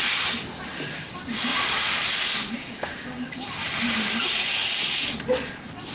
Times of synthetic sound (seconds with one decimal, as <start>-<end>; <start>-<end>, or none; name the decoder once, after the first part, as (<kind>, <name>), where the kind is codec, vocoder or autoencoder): 1.5-5.0 (vocoder, BigVGAN v2)